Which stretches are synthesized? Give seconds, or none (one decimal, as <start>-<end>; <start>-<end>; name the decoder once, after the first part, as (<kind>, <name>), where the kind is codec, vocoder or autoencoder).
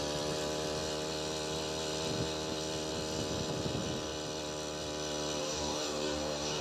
5.4-6.6 (codec, DAC)